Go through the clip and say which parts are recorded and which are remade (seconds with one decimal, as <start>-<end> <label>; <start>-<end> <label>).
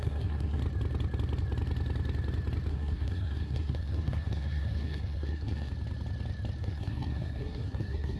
0.0-0.6 remade; 0.6-2.7 recorded; 2.7-5.7 remade; 5.7-6.6 recorded; 6.6-8.2 remade